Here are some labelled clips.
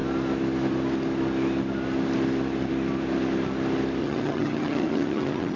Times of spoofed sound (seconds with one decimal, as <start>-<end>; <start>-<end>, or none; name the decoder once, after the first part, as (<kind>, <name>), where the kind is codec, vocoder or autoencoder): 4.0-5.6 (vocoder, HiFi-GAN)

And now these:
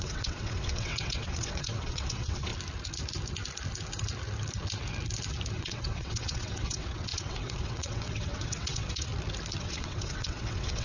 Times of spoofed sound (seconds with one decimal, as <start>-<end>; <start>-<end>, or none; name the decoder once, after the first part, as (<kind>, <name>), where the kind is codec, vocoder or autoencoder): 0.0-2.5 (vocoder, WaveNeXt); 5.5-9.1; 9.6-10.8

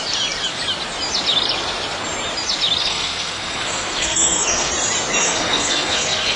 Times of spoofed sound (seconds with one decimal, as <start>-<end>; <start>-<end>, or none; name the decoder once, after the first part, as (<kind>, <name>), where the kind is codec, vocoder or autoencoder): 2.8-4.7 (codec, SNAC); 5.2-6.4